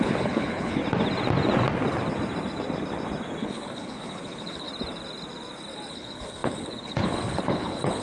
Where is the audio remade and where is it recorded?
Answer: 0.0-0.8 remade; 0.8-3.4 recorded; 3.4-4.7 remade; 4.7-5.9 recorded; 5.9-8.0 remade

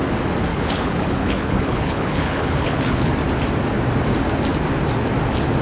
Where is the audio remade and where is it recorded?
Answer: 0.0-0.5 recorded; 0.5-3.1 remade; 3.1-5.6 recorded

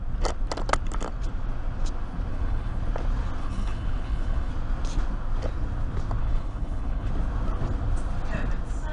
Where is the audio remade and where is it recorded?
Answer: 0.0-2.3 recorded; 2.3-2.8 remade; 2.8-3.4 recorded; 3.4-4.5 remade; 4.5-6.2 recorded; 6.2-7.1 remade; 7.1-8.9 recorded

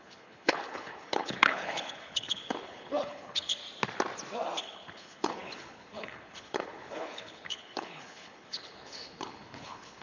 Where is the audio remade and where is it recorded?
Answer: 0.0-3.6 remade; 3.6-4.6 recorded; 4.6-10.0 remade